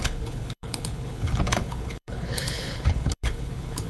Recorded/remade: remade